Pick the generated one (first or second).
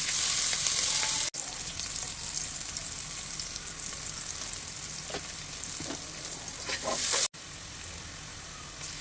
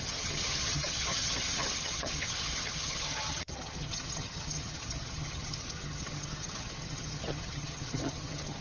second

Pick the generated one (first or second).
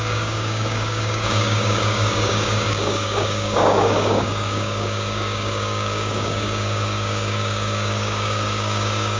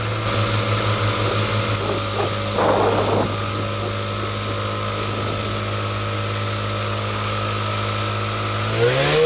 first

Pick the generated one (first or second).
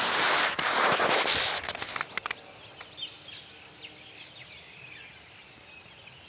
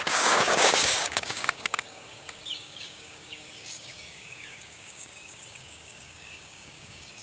second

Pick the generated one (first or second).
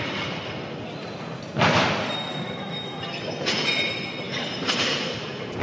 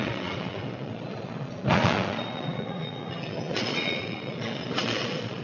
second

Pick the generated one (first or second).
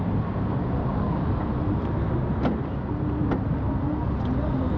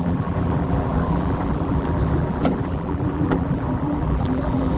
second